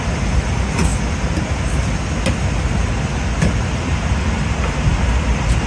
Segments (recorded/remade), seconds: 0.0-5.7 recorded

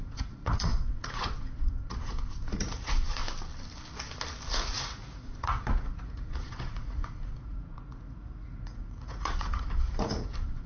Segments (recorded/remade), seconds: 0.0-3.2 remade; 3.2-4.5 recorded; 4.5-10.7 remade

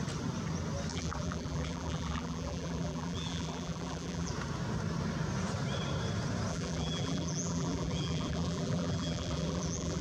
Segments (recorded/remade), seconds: 0.0-0.9 recorded; 0.9-4.3 remade; 4.3-6.5 recorded; 6.5-10.0 remade

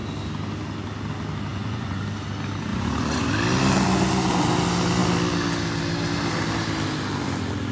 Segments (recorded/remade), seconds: 0.0-1.5 recorded; 1.5-2.0 remade; 2.0-2.7 recorded; 2.7-3.3 remade; 3.3-7.7 recorded